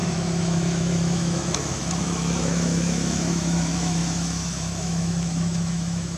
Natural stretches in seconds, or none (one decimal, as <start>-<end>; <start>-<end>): none